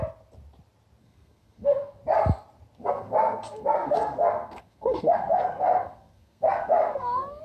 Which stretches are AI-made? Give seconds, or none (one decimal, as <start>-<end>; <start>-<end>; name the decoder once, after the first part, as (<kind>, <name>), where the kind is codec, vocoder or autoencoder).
1.0-2.0 (codec, SNAC); 2.8-7.4